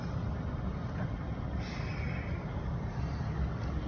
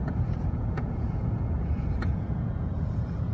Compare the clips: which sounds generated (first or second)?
second